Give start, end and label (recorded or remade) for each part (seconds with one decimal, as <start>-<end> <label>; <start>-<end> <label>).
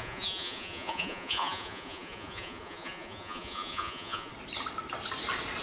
0.0-4.3 remade; 4.3-5.6 recorded